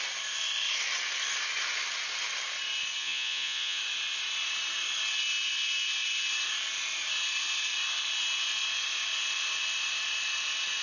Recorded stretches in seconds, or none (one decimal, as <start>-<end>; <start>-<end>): 0.0-3.0; 3.8-10.8